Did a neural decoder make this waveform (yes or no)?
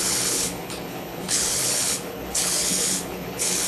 yes